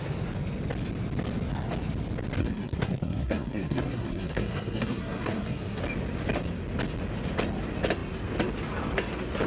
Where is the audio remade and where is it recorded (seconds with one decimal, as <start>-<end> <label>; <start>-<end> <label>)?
0.0-2.4 recorded; 2.4-5.8 remade; 5.8-9.5 recorded